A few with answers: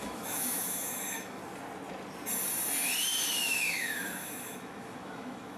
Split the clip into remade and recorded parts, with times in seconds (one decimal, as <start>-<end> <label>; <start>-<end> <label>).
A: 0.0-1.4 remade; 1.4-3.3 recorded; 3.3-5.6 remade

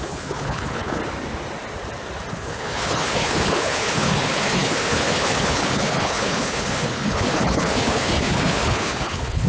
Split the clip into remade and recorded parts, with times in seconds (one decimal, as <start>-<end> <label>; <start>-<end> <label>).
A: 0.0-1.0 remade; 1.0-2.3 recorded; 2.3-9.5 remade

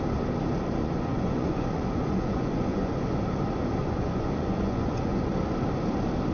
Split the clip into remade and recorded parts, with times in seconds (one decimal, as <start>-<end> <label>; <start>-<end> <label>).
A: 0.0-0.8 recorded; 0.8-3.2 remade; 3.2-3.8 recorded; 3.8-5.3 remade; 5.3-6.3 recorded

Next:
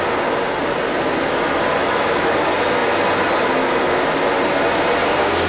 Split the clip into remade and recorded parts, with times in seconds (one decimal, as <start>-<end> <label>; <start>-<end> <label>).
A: 0.0-1.8 recorded; 1.8-2.3 remade; 2.3-5.5 recorded

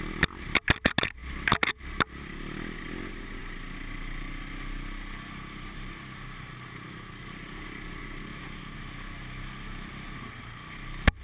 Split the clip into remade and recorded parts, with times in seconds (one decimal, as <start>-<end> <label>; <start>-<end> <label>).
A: 0.0-11.2 recorded

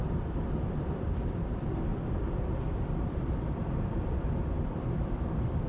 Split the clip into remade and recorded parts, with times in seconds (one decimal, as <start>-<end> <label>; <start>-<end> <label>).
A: 0.0-0.7 recorded; 0.7-1.9 remade; 1.9-2.7 recorded; 2.7-5.7 remade